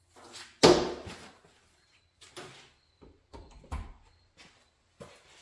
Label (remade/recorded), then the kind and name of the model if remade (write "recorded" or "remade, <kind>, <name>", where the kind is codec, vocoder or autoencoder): recorded